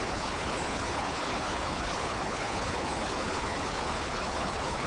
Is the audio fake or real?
fake